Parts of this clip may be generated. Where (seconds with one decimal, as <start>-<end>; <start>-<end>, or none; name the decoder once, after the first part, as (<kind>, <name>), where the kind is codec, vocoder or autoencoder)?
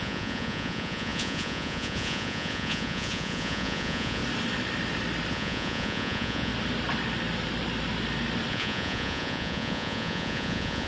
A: 0.0-4.2 (vocoder, Vocos); 5.3-6.5; 8.5-10.9